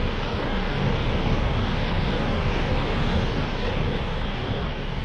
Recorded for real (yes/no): no